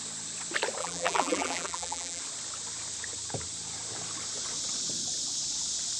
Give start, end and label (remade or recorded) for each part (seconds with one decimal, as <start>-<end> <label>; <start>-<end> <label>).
0.0-0.8 recorded; 0.8-2.2 remade; 2.2-6.0 recorded